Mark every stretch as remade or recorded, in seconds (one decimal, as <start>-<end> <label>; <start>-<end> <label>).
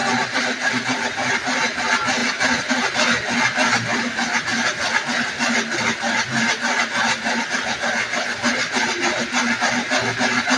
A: 0.0-10.6 recorded